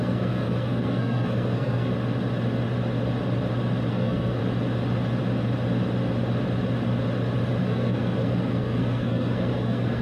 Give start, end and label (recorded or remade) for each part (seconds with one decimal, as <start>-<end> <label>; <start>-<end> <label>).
0.0-1.9 remade; 1.9-3.9 recorded; 3.9-4.4 remade; 4.4-7.6 recorded; 7.6-10.0 remade